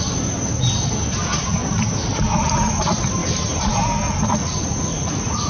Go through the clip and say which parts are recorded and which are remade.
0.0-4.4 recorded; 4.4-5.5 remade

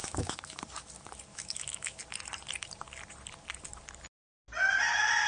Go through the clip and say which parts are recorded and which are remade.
0.0-0.6 remade; 0.6-1.3 recorded; 1.3-2.0 remade; 2.0-5.3 recorded

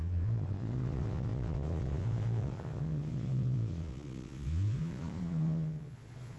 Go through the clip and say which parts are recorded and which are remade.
0.0-6.4 remade

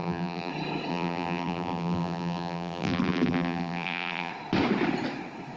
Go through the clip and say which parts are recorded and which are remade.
0.0-0.5 remade; 0.5-0.9 recorded; 0.9-4.3 remade; 4.3-5.6 recorded

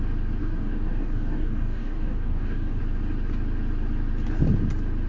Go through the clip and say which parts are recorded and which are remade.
0.0-0.4 recorded; 0.4-2.8 remade; 2.8-5.1 recorded